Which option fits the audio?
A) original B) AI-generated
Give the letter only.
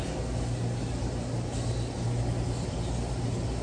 A